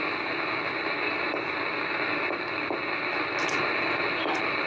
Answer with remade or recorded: recorded